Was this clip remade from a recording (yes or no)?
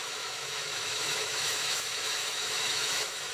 yes